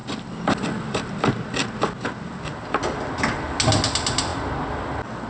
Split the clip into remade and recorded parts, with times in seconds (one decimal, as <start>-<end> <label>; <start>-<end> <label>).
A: 0.0-5.3 recorded